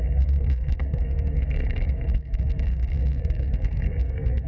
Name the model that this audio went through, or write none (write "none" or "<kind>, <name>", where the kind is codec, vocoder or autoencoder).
codec, SNAC